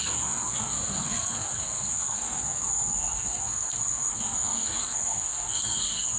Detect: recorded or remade remade